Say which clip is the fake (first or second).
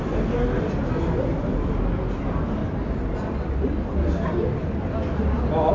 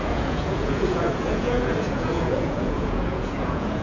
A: second